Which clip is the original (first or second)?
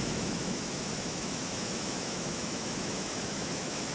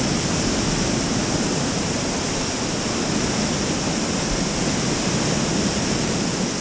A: second